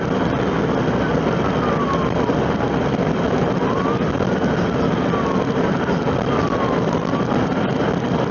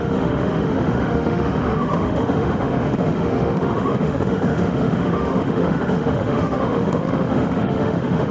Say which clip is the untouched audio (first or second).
first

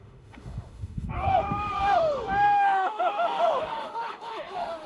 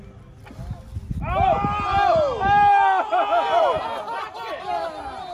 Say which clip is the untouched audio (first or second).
second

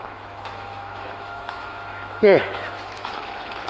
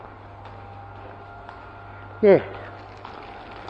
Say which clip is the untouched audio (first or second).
second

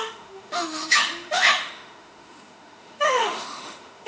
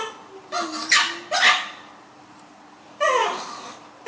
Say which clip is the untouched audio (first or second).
second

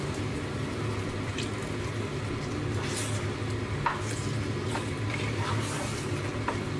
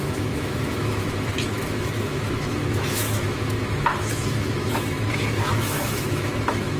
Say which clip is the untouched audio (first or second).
first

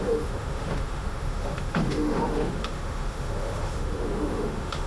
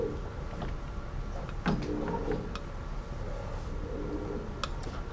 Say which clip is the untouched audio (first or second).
second